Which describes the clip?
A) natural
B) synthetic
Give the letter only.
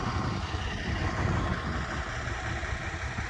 A